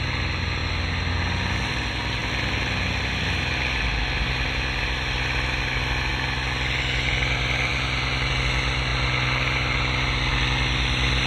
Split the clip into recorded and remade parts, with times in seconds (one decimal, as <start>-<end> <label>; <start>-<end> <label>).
0.0-11.3 recorded